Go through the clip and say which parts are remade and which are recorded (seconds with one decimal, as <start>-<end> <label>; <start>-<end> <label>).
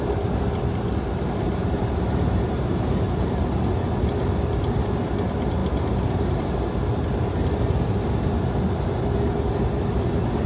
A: 0.0-10.5 recorded